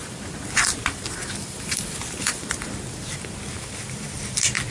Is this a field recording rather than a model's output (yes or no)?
no